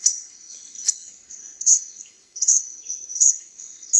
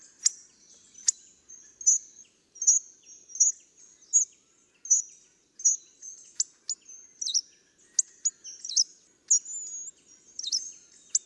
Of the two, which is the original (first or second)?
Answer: second